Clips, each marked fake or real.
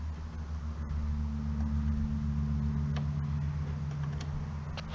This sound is real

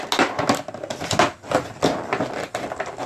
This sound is real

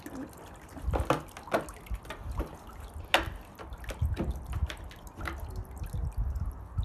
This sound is real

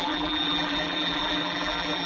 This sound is fake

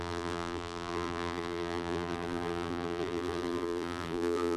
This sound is fake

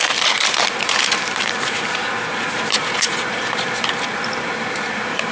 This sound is fake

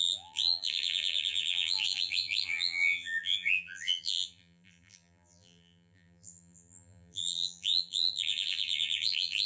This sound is fake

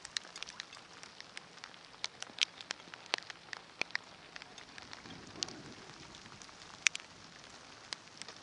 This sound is real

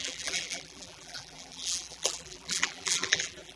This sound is fake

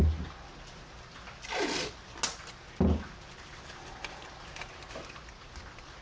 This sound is real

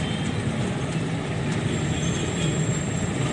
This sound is real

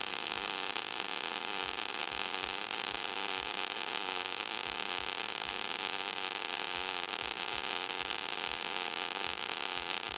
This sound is fake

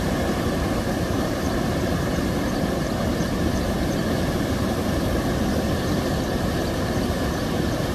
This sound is fake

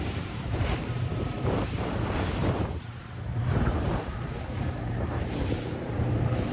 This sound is fake